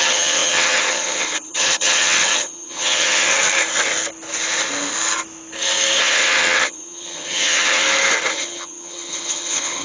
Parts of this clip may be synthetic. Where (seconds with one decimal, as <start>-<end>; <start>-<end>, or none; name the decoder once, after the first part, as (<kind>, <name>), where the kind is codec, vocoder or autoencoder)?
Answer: 0.0-3.3 (vocoder, HiFi-GAN); 6.0-7.8; 8.3-9.8